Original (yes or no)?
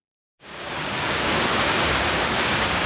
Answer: no